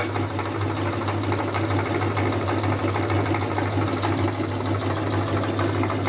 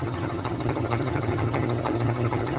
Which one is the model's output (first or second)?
second